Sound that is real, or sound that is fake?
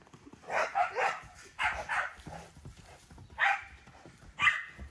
real